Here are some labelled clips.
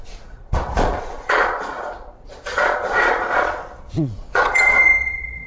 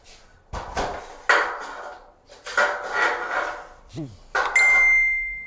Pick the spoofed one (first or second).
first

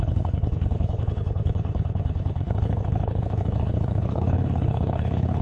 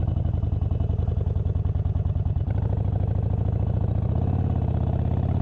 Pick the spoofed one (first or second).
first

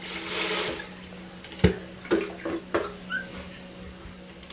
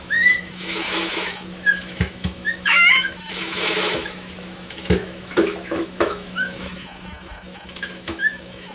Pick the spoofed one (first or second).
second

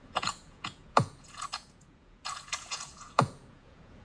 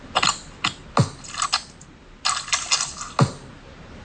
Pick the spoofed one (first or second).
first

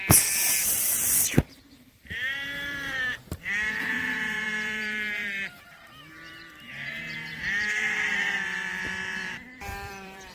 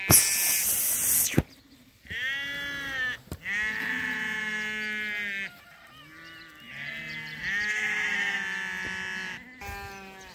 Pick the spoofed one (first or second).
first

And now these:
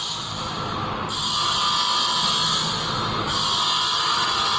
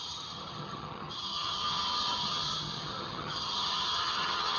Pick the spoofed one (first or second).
second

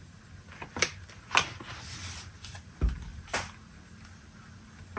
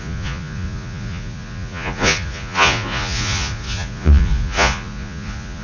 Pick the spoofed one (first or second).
second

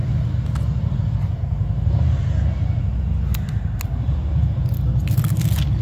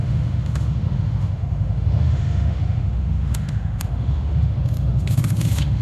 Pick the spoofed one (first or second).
second